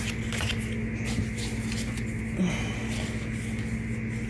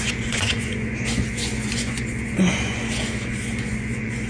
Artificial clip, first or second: second